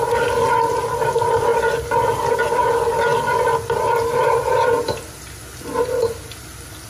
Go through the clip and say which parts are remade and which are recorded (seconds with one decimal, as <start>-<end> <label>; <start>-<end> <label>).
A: 0.0-6.9 recorded